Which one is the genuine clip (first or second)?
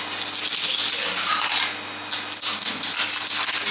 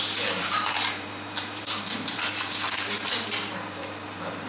first